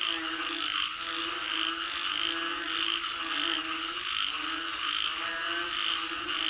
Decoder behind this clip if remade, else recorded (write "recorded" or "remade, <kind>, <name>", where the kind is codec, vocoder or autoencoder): recorded